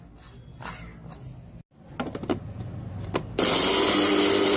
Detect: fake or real real